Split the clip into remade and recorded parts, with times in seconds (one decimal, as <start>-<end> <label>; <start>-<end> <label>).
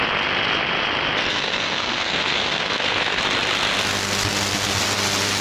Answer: 0.0-1.2 recorded; 1.2-3.2 remade; 3.2-5.4 recorded